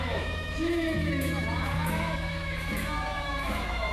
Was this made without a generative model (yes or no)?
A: no